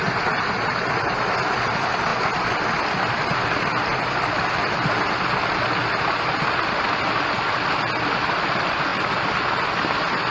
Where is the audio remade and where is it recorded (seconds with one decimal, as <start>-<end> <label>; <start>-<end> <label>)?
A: 0.0-10.3 recorded